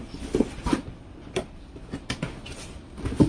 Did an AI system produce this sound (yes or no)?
no